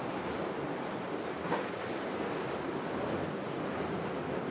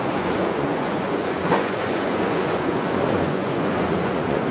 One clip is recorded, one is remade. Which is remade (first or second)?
second